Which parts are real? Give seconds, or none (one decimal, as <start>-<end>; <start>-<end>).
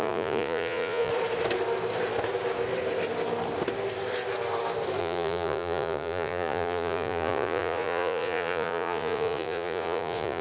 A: 1.1-5.0